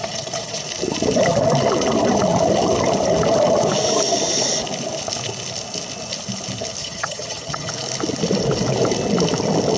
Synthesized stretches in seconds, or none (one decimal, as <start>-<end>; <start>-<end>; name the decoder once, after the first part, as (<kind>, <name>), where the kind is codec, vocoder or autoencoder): 0.0-0.6 (vocoder, HiFi-GAN); 6.8-7.7